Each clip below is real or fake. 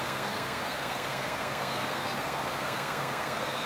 fake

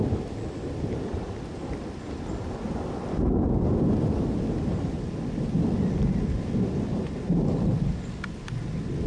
real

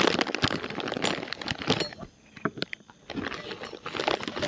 real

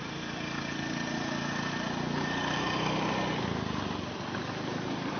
real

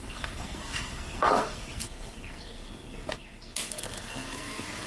fake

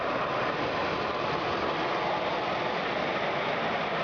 real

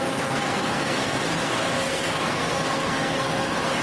fake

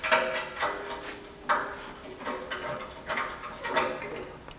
real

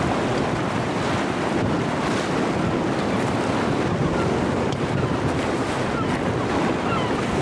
real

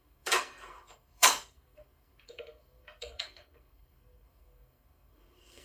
fake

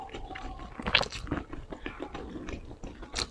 real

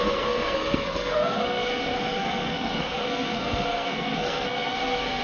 fake